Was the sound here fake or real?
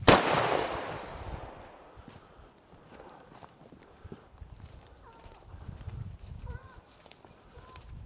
fake